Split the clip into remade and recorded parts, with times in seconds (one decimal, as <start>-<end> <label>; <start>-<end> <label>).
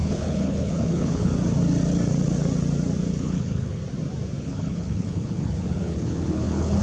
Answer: 0.0-1.3 remade; 1.3-3.1 recorded; 3.1-3.8 remade; 3.8-4.4 recorded; 4.4-6.8 remade